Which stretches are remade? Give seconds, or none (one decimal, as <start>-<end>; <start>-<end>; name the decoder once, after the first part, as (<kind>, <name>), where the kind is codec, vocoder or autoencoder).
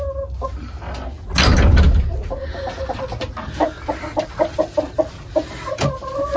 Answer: none